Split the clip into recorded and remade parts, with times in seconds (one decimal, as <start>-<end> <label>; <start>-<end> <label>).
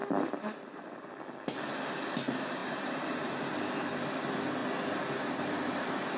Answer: 0.0-1.2 remade; 1.2-2.6 recorded; 2.6-3.3 remade; 3.3-6.2 recorded